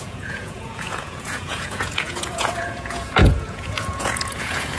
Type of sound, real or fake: fake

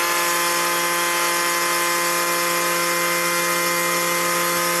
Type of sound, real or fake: real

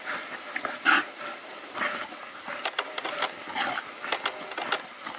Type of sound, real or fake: real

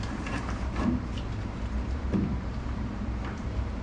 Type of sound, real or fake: fake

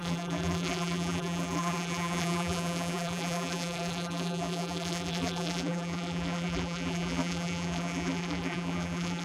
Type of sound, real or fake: fake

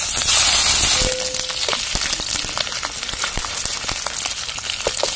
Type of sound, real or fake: real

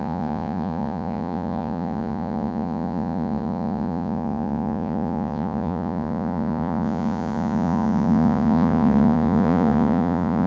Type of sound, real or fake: fake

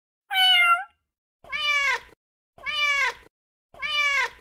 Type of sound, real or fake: real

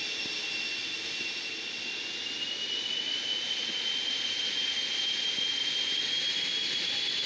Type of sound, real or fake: real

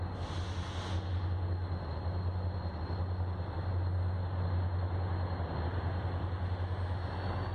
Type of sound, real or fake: real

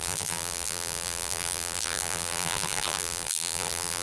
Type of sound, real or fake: fake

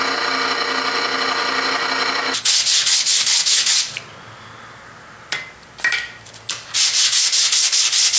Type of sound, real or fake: real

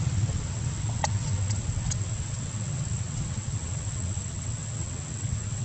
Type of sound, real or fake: fake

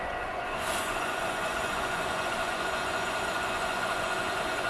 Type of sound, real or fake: fake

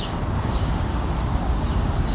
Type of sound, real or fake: fake